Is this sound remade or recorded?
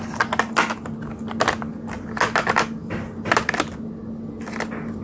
recorded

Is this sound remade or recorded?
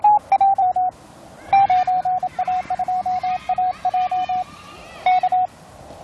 recorded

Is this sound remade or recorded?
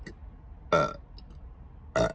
recorded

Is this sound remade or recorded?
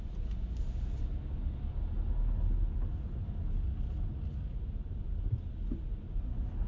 recorded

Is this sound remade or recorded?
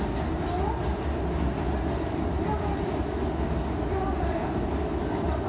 recorded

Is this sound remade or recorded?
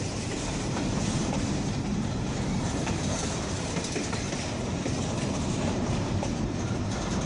remade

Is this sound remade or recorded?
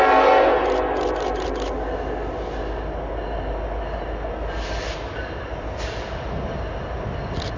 recorded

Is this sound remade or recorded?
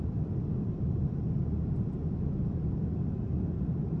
recorded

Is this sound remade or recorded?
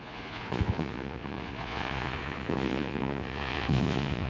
remade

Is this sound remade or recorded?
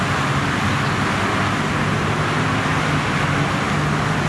recorded